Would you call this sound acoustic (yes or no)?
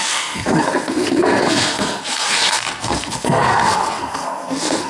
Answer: no